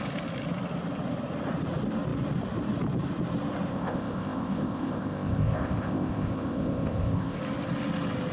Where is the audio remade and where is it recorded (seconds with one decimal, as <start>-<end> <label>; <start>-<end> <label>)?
0.0-3.7 recorded; 3.7-7.4 remade; 7.4-8.3 recorded